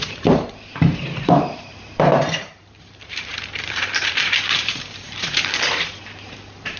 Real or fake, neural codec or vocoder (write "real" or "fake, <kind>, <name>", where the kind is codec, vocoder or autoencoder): fake, vocoder, BigVGAN v2